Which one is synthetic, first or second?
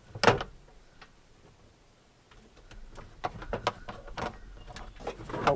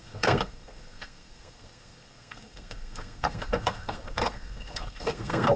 second